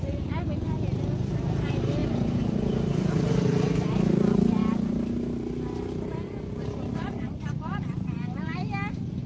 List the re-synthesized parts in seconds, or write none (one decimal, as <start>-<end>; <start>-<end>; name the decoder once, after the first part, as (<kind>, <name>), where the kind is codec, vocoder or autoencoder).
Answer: 0.0-4.6 (vocoder, BigVGAN v2); 6.9-8.6